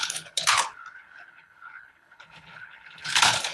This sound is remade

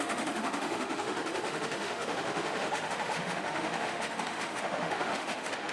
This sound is remade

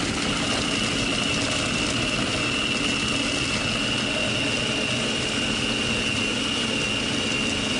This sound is recorded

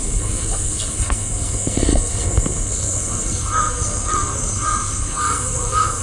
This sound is remade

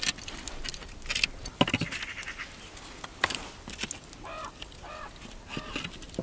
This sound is recorded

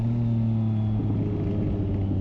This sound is recorded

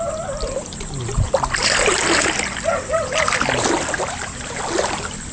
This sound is recorded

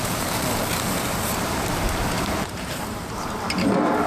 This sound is remade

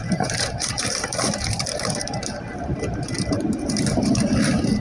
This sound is remade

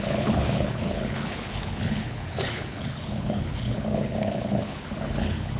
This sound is remade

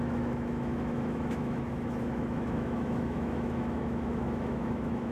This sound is remade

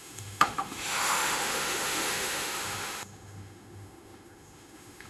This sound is remade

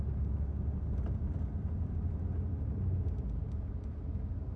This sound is recorded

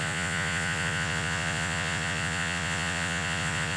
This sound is remade